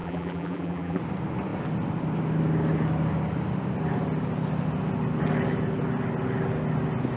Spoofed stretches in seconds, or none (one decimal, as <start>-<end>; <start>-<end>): 0.0-1.0